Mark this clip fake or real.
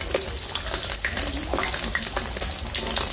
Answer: real